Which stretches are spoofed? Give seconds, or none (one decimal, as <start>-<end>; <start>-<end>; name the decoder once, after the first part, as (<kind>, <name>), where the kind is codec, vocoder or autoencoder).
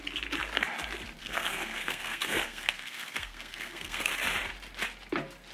1.2-4.1 (codec, SNAC)